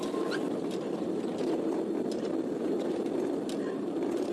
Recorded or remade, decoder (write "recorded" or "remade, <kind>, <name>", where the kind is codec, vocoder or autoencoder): recorded